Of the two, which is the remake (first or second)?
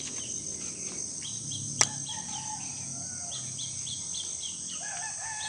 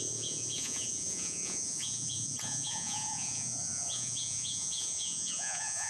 second